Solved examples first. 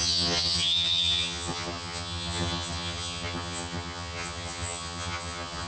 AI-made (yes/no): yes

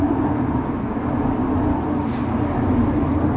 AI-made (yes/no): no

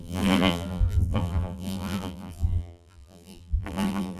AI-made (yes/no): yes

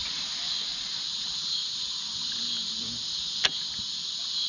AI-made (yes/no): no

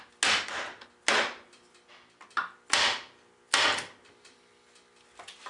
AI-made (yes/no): no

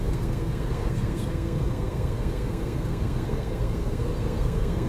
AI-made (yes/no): yes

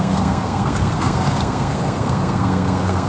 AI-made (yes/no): yes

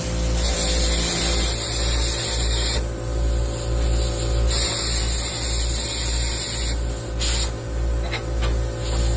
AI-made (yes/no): no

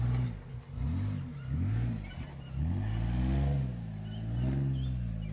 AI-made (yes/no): no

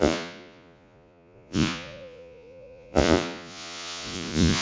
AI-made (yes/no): yes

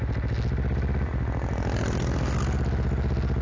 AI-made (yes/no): no